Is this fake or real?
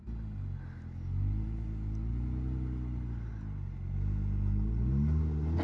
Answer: real